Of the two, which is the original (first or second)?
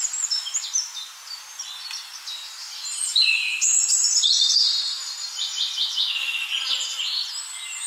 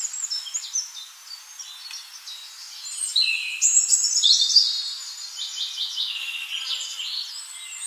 second